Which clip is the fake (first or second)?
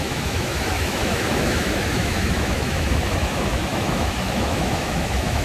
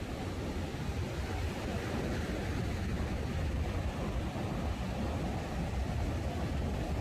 first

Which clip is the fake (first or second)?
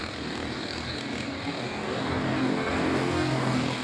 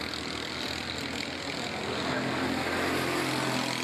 first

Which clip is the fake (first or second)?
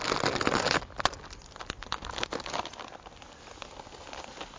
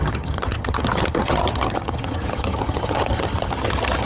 second